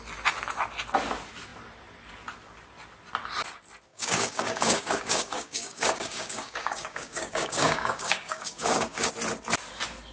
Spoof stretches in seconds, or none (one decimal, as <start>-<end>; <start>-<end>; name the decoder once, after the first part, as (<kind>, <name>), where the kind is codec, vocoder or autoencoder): 3.9-9.1 (codec, DAC)